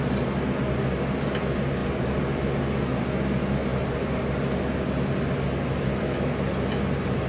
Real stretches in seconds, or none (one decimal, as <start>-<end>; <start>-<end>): 0.0-7.3